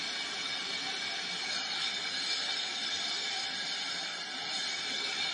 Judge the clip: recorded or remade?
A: recorded